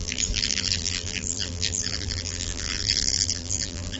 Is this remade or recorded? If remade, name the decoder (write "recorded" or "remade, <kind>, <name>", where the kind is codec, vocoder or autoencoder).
remade, vocoder, BigVGAN v2